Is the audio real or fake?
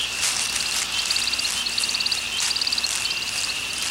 real